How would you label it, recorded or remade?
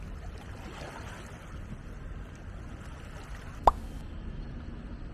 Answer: recorded